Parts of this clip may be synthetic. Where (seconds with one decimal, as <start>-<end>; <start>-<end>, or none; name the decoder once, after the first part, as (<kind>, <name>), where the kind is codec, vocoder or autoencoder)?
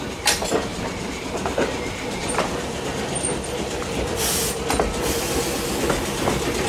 0.7-3.0 (vocoder, BigVGAN v2)